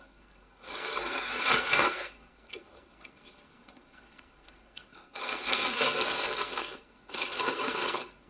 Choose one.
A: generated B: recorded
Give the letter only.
A